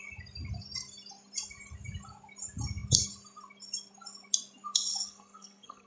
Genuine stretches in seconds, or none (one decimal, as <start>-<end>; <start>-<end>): 0.0-4.9